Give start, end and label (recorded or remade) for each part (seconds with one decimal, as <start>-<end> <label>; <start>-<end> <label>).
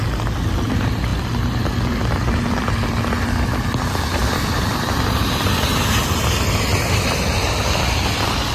0.0-8.5 recorded